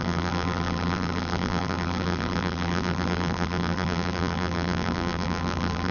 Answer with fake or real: fake